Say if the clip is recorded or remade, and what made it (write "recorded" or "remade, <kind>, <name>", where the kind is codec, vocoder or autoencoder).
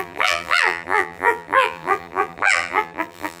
remade, vocoder, BigVGAN v2